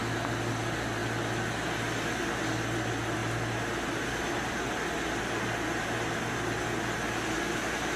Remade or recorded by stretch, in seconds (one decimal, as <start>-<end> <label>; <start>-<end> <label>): 0.0-8.0 recorded